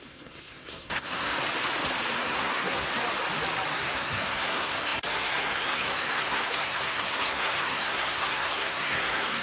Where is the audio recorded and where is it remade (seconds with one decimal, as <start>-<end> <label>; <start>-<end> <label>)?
0.0-1.3 remade; 1.3-2.2 recorded; 2.2-2.9 remade; 2.9-3.7 recorded; 3.7-9.4 remade